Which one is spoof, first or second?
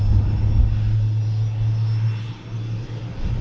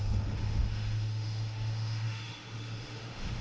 second